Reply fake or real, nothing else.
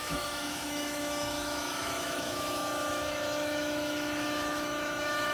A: fake